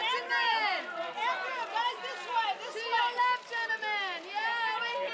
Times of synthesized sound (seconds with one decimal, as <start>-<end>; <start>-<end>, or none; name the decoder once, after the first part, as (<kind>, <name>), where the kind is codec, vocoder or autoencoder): none